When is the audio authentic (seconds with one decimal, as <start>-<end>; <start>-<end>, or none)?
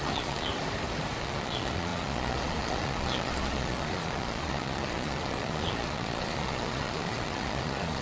0.5-1.2